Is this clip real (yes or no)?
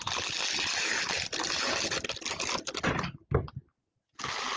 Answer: yes